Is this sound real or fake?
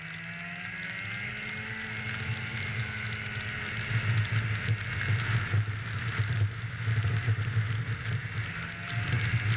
real